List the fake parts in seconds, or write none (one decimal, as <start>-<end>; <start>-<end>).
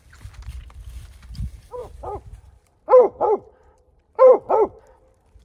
1.8-4.8